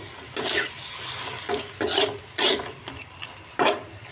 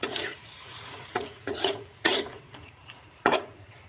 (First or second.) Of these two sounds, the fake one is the second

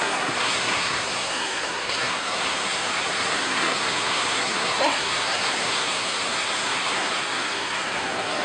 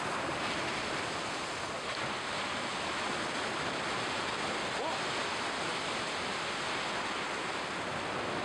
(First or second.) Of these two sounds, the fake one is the first